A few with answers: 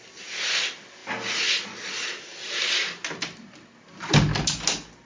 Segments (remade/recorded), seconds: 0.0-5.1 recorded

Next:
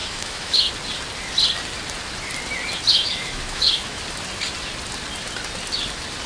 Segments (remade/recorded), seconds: 0.0-0.7 remade; 0.7-2.9 recorded; 2.9-4.0 remade; 4.0-6.3 recorded

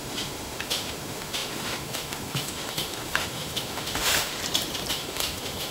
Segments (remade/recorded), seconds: 0.0-4.4 remade; 4.4-4.9 recorded; 4.9-5.7 remade